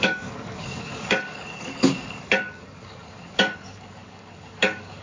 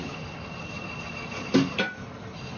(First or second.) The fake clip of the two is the first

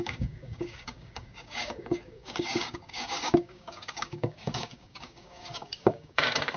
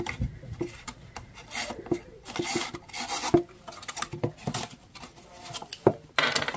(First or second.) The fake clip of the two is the first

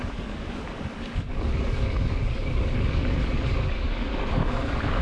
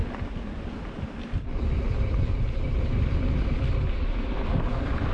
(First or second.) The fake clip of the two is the first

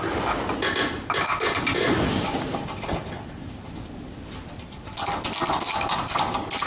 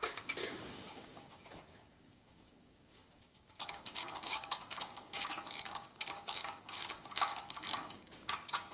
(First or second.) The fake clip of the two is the second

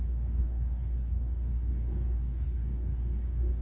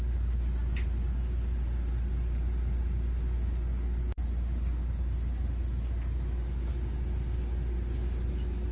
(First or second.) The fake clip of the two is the first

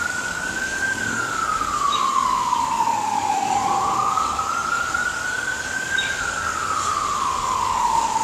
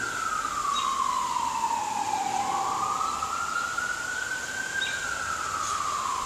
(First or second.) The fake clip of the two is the first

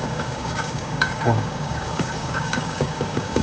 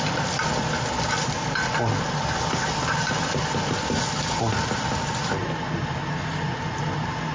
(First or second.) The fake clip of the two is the first